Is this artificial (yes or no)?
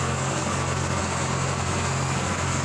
yes